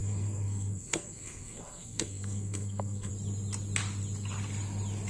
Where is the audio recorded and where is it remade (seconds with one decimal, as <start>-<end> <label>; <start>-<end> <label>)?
0.0-3.1 remade; 3.1-5.1 recorded